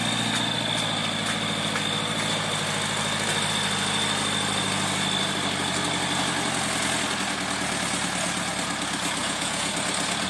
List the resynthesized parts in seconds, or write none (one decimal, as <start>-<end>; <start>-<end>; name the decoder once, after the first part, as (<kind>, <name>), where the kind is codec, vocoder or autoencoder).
9.2-9.7 (vocoder, Vocos)